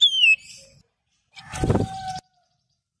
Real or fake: real